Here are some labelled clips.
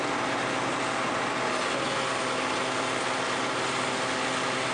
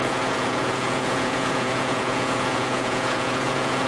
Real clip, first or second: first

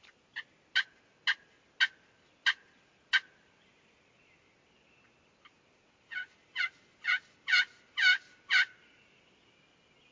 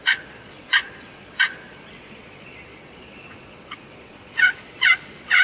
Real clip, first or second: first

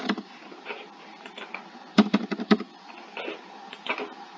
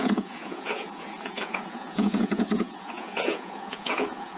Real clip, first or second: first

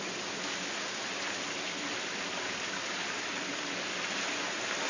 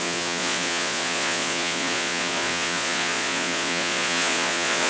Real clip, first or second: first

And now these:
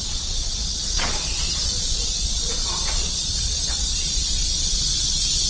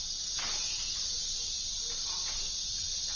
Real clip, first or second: second